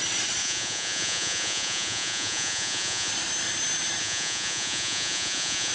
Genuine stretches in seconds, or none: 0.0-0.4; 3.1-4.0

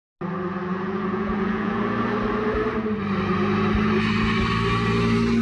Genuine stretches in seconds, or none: 0.0-0.7; 1.8-5.4

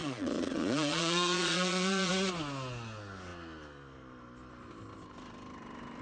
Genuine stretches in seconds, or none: 2.1-6.0

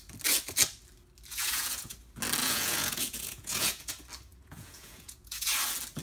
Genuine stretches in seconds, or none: 0.0-1.3; 1.9-2.4; 3.9-4.3; 5.5-6.0

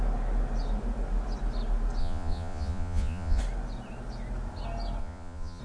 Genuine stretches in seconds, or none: 0.0-2.0; 3.4-5.0